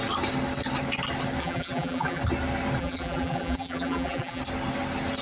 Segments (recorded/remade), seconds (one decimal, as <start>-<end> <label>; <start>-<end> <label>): 0.0-1.4 recorded; 1.4-2.2 remade; 2.2-2.8 recorded; 2.8-4.4 remade; 4.4-5.2 recorded